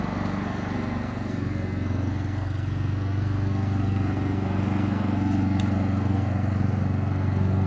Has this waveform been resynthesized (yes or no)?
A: yes